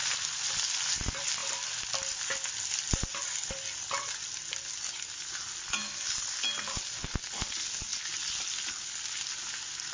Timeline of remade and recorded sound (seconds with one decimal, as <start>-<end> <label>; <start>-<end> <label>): 0.0-9.9 recorded